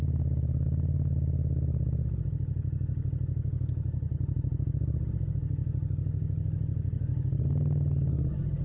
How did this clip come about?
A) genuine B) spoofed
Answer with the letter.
A